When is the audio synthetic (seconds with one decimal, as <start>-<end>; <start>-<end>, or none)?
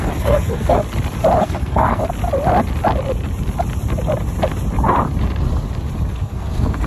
0.0-0.8; 1.4-2.0; 6.1-6.9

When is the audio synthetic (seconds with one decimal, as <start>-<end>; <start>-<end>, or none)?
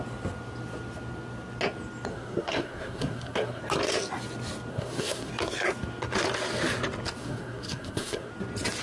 2.1-3.6; 4.7-5.3; 7.2-8.3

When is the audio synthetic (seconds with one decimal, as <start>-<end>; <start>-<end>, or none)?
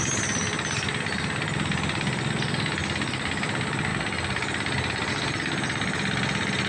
none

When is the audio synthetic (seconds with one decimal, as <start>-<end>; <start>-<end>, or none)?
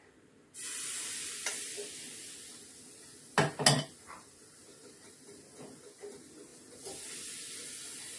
none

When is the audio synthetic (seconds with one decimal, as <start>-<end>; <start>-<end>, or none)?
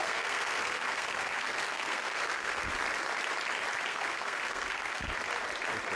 0.0-2.7; 3.9-5.1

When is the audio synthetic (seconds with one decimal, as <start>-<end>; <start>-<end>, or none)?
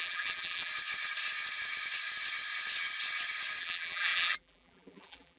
0.0-0.7; 3.6-5.4